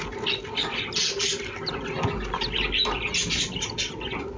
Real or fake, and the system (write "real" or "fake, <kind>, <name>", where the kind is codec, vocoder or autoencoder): real